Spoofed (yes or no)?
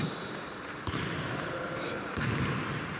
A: yes